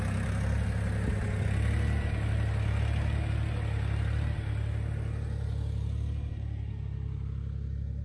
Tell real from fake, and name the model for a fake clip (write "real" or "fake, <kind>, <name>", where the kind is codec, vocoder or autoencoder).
real